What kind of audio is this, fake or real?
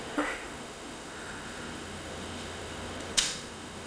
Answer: fake